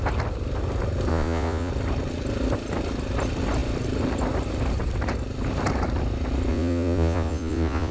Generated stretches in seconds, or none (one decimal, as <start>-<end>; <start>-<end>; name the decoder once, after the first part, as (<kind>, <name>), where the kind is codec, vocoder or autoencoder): 1.1-1.7 (vocoder, Vocos); 6.5-7.9